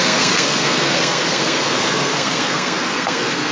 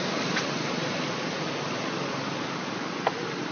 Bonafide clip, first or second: second